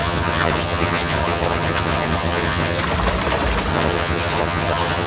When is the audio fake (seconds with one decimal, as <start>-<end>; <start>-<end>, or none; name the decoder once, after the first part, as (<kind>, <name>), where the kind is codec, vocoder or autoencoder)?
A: 0.0-2.8 (vocoder, HiFi-GAN); 3.7-5.1